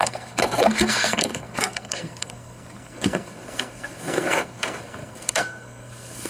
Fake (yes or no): yes